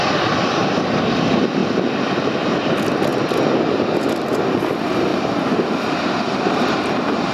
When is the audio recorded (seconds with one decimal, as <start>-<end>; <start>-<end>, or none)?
0.0-1.6; 2.7-5.1; 6.8-7.3